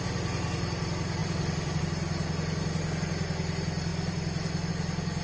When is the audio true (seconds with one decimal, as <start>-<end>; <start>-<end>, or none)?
0.0-1.2; 1.8-3.9; 4.7-5.2